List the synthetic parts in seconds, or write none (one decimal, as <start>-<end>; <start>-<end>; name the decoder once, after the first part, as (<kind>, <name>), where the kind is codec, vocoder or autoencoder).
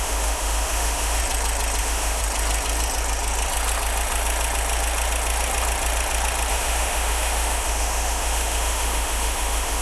0.0-1.2 (autoencoder, DAC-VAE); 1.8-2.2; 6.5-9.8